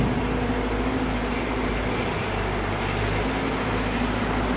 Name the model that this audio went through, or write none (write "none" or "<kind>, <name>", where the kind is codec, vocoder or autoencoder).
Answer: none